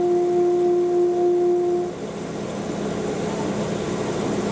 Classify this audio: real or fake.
real